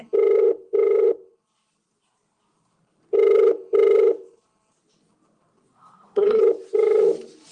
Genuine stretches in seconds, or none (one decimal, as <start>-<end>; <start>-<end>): 0.0-5.7; 6.4-7.5